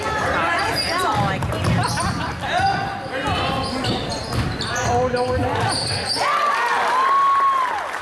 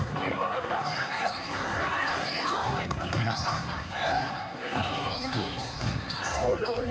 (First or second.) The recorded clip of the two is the first